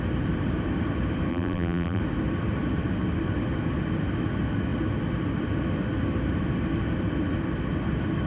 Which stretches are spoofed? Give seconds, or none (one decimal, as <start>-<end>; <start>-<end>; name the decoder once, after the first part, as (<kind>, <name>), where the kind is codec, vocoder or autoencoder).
1.3-2.0 (vocoder, BigVGAN v2)